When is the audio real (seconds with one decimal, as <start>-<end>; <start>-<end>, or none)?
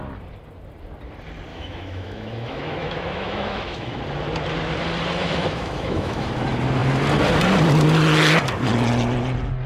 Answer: 0.0-1.5; 4.0-5.2; 6.3-9.7